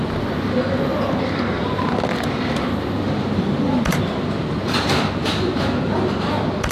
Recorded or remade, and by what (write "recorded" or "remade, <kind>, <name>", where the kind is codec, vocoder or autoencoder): recorded